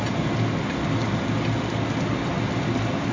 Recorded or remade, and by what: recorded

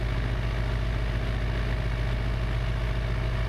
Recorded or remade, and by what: recorded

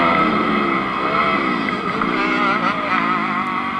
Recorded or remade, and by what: recorded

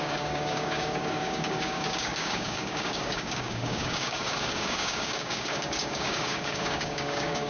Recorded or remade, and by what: remade, codec, DAC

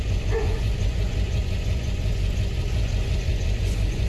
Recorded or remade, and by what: remade, vocoder, Vocos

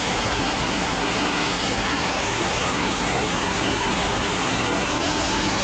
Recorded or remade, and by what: remade, codec, SNAC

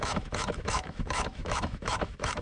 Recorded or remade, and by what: remade, autoencoder, DAC-VAE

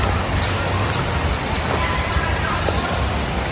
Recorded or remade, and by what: remade, vocoder, BigVGAN v2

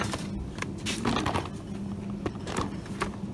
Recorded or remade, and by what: recorded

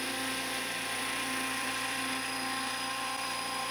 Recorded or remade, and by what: remade, vocoder, BigVGAN v2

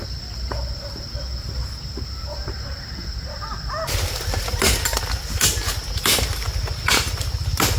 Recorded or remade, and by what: recorded